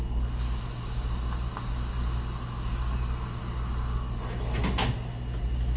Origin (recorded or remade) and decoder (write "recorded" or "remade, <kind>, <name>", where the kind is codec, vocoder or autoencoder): recorded